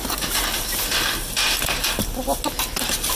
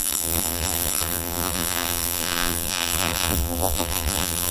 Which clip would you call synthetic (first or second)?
second